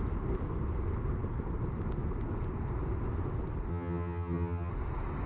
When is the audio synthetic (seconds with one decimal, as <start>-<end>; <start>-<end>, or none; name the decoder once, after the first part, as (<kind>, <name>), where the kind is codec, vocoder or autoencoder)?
3.7-4.7 (vocoder, HiFi-GAN)